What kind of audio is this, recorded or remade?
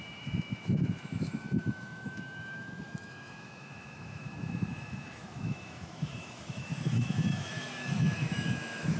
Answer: remade